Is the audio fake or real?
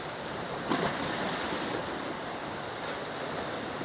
real